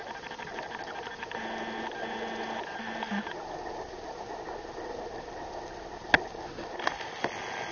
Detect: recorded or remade recorded